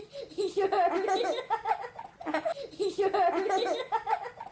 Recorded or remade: recorded